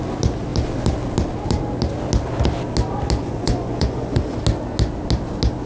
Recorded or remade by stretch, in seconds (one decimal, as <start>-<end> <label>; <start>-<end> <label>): 0.0-3.2 recorded; 3.2-4.4 remade; 4.4-5.7 recorded